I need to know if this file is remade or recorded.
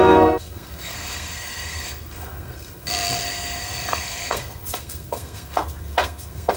remade